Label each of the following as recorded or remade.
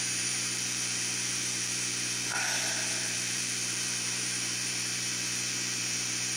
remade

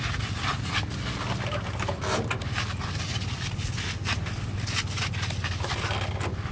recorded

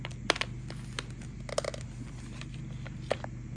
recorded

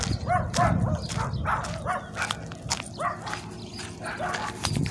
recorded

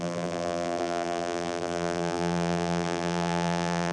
remade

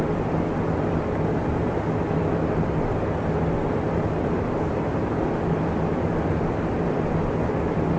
recorded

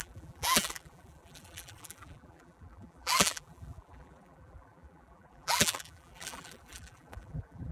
remade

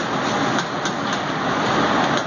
recorded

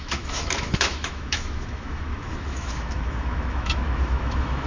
remade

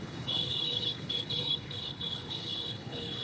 remade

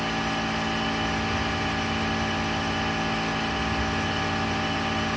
recorded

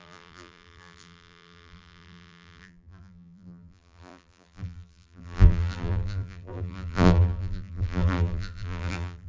remade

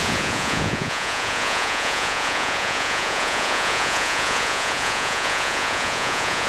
remade